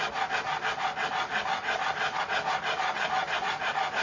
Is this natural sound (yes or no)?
yes